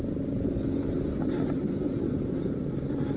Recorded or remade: recorded